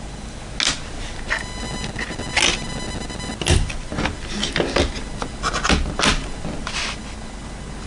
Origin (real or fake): real